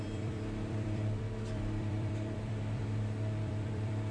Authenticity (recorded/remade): remade